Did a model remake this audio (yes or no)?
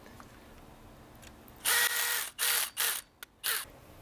no